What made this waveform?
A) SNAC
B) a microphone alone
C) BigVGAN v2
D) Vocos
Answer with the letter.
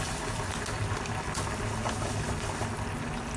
B